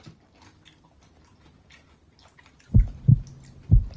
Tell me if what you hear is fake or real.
real